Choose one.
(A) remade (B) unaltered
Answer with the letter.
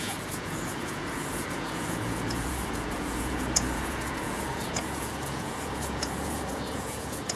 A